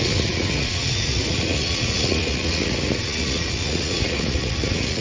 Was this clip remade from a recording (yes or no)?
yes